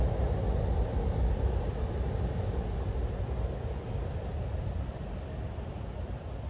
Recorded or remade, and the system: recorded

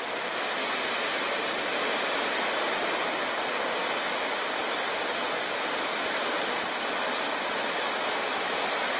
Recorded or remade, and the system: recorded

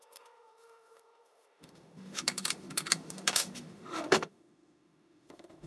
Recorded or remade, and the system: remade, autoencoder, DAC-VAE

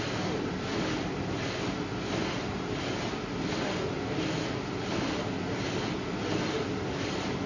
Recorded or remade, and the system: recorded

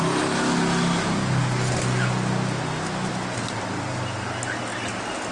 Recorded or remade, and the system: recorded